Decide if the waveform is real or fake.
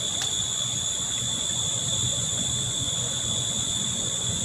fake